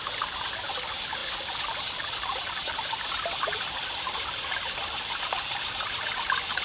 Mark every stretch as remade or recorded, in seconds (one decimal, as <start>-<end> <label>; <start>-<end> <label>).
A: 0.0-6.6 recorded